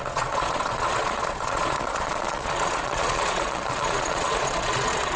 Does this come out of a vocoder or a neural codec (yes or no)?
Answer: yes